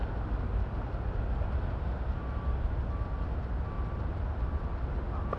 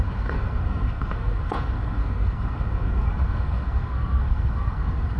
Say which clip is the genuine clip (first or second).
first